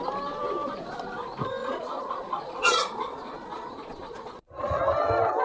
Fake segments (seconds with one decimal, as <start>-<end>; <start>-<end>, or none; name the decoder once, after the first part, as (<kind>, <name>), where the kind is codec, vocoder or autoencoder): 1.6-4.8 (vocoder, Vocos)

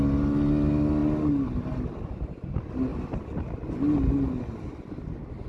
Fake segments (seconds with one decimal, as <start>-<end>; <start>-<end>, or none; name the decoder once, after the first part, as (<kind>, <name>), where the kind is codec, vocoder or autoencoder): none

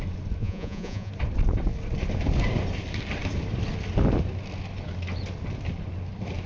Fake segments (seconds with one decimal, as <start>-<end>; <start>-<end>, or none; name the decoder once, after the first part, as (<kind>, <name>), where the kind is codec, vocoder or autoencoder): 0.4-1.1 (vocoder, Vocos)

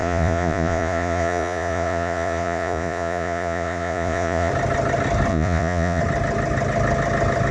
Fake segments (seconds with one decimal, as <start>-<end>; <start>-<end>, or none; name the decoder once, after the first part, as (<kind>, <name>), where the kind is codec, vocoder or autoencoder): 0.0-4.5 (vocoder, Vocos); 5.3-6.0